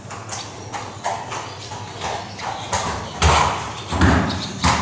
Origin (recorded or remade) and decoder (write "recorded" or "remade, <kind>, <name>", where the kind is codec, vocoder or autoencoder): recorded